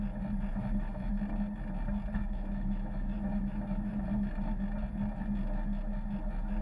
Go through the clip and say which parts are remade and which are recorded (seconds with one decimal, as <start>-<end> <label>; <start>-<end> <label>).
0.0-0.5 recorded; 0.5-1.1 remade; 1.1-2.2 recorded; 2.2-4.6 remade; 4.6-6.6 recorded